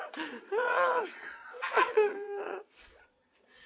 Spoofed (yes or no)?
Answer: yes